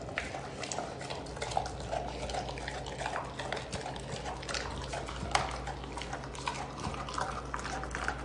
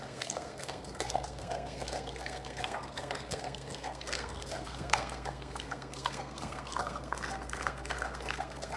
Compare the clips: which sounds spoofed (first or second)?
second